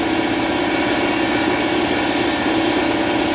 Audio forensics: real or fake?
real